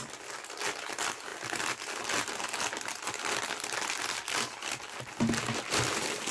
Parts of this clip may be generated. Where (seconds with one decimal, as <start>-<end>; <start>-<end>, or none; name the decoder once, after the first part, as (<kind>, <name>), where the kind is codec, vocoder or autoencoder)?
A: none